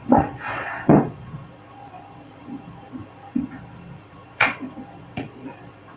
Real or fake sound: fake